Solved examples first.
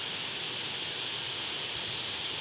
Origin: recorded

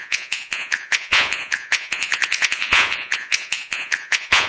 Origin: remade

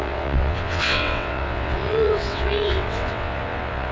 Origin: remade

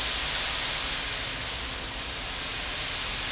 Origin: recorded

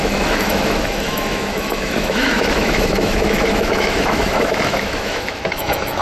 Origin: remade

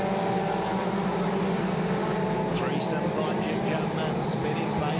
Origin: recorded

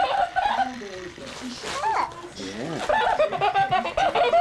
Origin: recorded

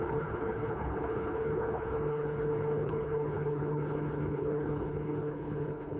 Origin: remade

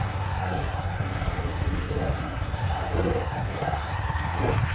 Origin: remade